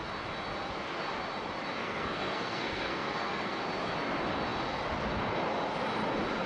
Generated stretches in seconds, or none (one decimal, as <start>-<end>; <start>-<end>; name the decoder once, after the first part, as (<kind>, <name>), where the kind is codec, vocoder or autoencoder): 1.8-3.6 (codec, SNAC)